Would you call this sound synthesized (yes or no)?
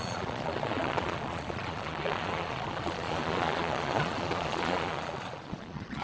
yes